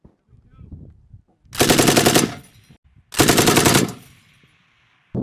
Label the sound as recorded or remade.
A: recorded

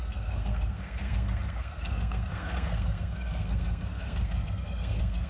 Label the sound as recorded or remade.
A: remade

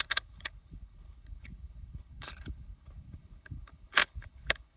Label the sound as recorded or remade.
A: remade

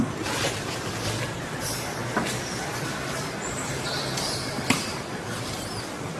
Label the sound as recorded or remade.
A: recorded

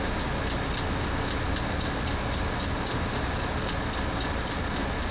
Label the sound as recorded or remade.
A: recorded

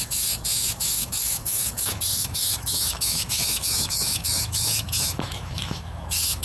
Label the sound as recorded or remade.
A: remade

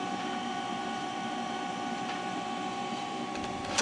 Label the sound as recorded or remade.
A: remade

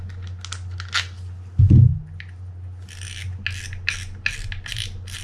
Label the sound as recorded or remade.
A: recorded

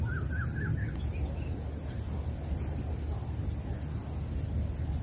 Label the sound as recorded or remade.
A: recorded